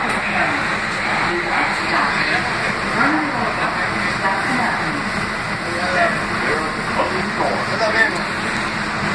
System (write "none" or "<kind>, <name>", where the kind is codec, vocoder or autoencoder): none